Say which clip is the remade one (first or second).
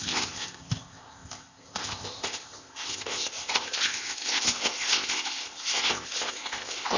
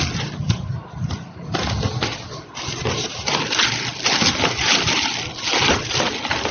first